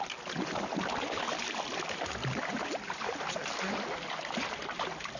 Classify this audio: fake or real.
real